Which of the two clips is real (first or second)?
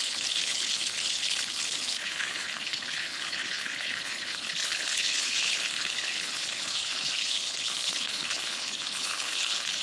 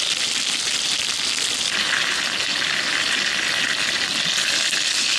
second